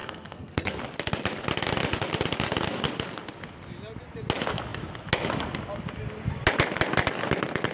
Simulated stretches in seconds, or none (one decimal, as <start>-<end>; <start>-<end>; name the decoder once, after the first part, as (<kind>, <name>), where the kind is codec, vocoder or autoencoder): 0.0-0.8 (codec, SNAC)

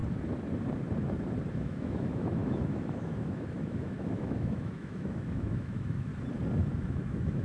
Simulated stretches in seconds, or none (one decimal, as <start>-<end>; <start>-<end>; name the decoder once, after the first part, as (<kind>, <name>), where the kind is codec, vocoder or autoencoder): 1.5-6.1 (autoencoder, DAC-VAE); 6.6-7.4

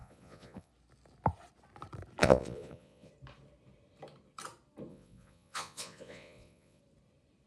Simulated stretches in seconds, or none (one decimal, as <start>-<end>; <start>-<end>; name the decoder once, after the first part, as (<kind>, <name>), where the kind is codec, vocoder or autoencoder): 0.0-0.7 (vocoder, Vocos); 2.2-3.1; 4.9-6.8

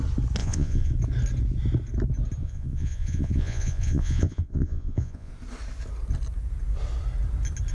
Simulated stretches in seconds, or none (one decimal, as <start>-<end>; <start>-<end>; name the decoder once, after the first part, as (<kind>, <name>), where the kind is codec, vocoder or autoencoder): 0.4-0.9 (vocoder, Vocos); 2.4-5.3

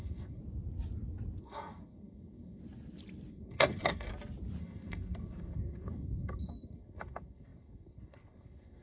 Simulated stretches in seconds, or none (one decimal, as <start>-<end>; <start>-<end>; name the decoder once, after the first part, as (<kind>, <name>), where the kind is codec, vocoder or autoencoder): 0.0-0.4 (codec, SNAC); 1.4-2.6; 3.3-4.1; 4.6-8.8